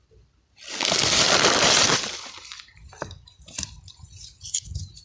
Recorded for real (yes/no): no